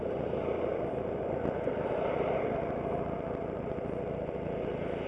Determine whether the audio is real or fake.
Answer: fake